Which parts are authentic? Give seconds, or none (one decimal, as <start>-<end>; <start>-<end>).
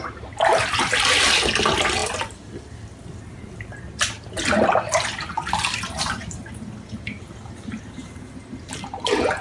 0.0-9.4